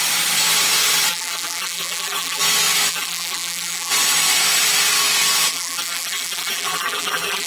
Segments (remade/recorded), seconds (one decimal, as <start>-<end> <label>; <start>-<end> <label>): 0.0-1.1 recorded; 1.1-2.4 remade; 2.4-2.9 recorded; 2.9-3.9 remade; 3.9-5.5 recorded; 5.5-7.5 remade